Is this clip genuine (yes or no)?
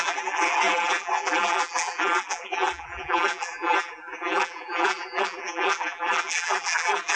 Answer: no